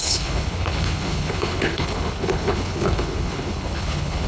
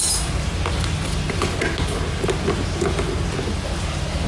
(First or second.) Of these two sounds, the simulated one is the first